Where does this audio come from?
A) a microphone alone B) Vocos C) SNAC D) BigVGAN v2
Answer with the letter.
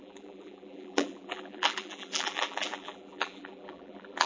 D